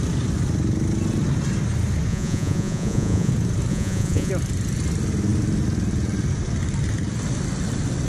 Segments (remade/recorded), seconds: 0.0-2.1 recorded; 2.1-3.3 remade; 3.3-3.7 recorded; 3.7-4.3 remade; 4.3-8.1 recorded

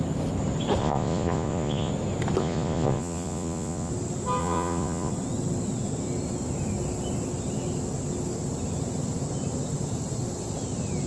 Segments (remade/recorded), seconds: 0.0-0.8 recorded; 0.8-1.9 remade; 1.9-2.4 recorded; 2.4-3.9 remade; 3.9-4.4 recorded; 4.4-5.1 remade; 5.1-11.1 recorded

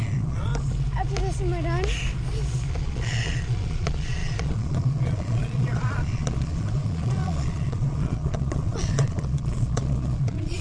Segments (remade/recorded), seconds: 0.0-0.5 remade; 0.5-2.7 recorded; 2.7-10.6 remade

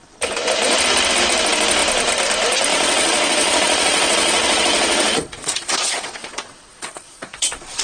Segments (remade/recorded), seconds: 0.0-2.7 recorded; 2.7-7.8 remade

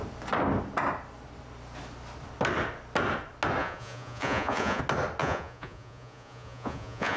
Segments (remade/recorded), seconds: 0.0-3.6 recorded; 3.6-4.8 remade; 4.8-5.2 recorded; 5.2-7.2 remade

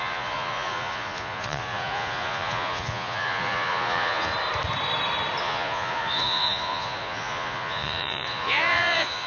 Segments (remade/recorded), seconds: 0.0-4.3 remade; 4.3-5.4 recorded; 5.4-9.3 remade